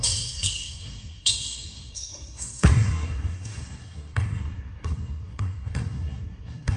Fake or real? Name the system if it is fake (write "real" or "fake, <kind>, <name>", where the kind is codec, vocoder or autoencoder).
fake, codec, SNAC